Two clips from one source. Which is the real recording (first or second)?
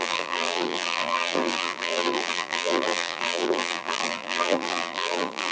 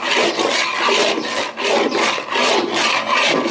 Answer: second